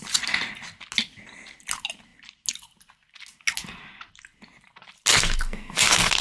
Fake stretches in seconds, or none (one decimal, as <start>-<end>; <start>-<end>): 5.1-6.2